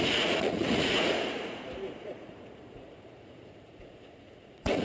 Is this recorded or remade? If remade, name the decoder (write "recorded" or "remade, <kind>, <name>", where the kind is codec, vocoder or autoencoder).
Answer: remade, vocoder, Vocos